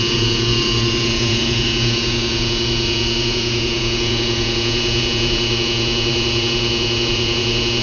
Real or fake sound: fake